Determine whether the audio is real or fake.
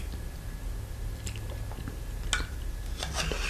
real